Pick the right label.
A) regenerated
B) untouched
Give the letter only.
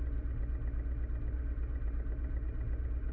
B